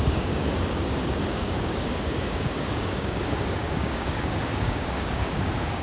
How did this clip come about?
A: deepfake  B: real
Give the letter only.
A